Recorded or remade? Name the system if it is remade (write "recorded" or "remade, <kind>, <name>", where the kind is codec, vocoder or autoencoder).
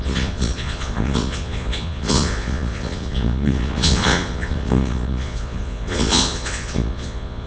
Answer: remade, vocoder, Vocos